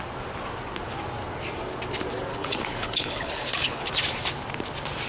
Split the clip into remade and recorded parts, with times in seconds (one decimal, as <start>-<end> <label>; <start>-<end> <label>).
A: 0.0-2.3 recorded; 2.3-3.9 remade; 3.9-5.1 recorded